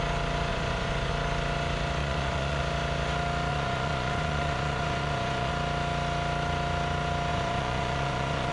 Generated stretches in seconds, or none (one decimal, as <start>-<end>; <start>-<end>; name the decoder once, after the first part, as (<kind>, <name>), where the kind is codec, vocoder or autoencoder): 0.5-1.1 (vocoder, Vocos); 2.0-2.6; 3.5-5.5; 7.3-8.5